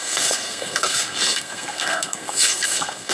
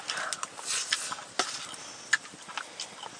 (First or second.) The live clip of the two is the second